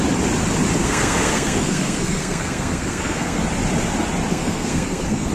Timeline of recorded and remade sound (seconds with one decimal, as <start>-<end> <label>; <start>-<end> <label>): 0.0-0.8 recorded; 0.8-3.4 remade; 3.4-4.3 recorded; 4.3-5.3 remade